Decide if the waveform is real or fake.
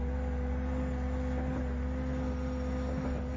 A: real